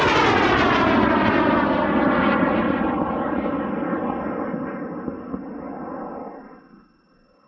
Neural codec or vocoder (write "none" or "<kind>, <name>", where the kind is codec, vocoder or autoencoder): none